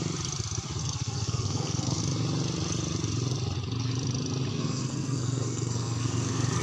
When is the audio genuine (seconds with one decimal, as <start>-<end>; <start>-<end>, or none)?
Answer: 0.0-0.8; 2.0-4.5